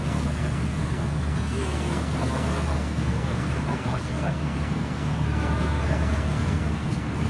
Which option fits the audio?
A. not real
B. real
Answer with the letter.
A